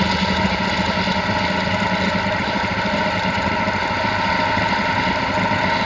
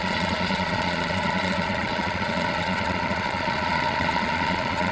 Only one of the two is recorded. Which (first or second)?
first